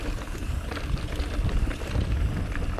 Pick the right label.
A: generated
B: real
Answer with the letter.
B